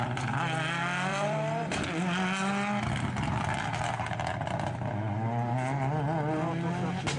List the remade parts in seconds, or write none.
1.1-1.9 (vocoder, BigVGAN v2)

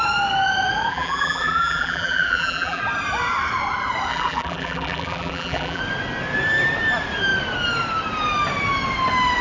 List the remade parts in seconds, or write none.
0.9-2.8 (vocoder, BigVGAN v2); 4.1-5.8

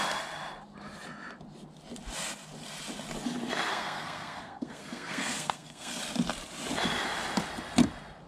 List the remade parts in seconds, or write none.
3.7-6.0 (codec, SNAC)

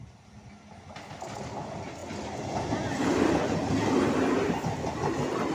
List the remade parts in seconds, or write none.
none

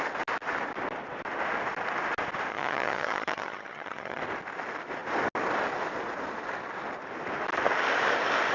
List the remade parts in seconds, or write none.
2.5-4.2 (vocoder, HiFi-GAN)